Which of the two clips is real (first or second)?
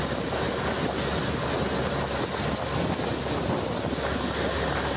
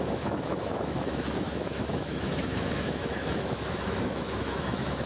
first